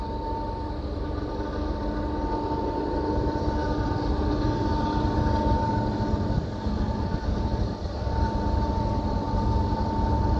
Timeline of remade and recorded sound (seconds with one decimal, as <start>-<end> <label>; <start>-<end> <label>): 0.0-10.4 recorded